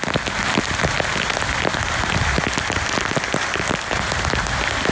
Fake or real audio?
real